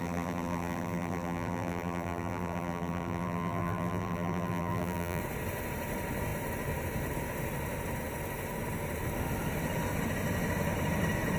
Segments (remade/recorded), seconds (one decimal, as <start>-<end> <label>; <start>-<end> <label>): 0.0-5.2 remade; 5.2-11.4 recorded